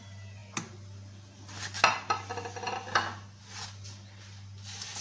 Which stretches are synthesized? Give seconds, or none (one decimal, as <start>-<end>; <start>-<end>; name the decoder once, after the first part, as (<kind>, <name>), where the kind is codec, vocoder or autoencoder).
none